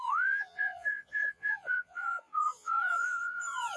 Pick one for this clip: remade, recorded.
remade